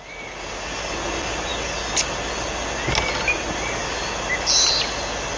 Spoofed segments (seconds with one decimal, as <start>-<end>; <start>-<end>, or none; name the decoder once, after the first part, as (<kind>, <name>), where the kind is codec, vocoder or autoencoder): none